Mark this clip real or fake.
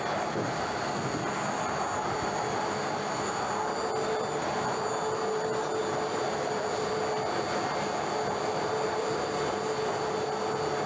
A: real